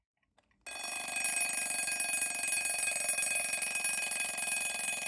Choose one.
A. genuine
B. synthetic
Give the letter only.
A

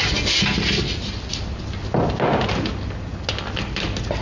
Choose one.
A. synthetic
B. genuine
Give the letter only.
B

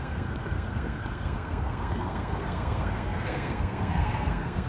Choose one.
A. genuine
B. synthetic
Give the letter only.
B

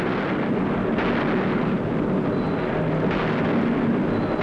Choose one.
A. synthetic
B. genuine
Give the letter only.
B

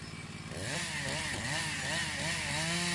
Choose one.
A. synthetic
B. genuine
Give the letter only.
B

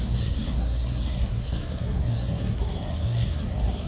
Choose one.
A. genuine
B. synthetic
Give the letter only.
B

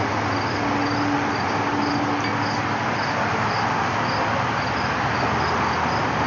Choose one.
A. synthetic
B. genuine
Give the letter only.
B